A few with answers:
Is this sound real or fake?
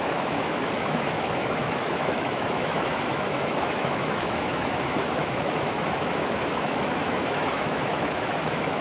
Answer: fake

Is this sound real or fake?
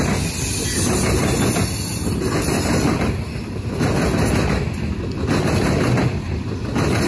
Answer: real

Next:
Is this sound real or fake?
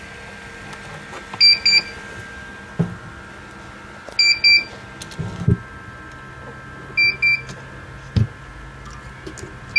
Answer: real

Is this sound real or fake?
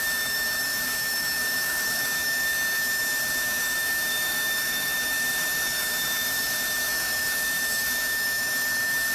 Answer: fake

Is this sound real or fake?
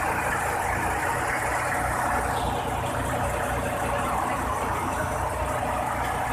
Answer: real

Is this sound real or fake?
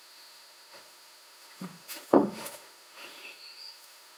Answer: fake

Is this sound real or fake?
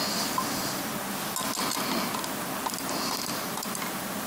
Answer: real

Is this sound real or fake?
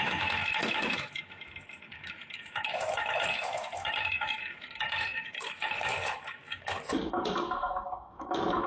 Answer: fake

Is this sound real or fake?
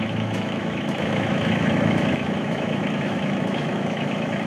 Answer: fake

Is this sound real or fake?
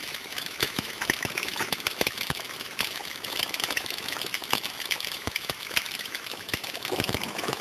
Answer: fake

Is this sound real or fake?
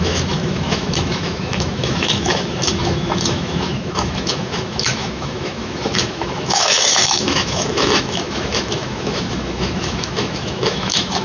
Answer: fake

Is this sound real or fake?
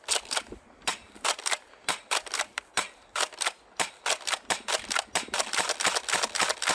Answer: real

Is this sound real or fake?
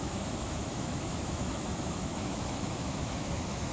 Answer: fake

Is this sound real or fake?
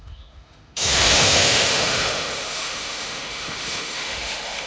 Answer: fake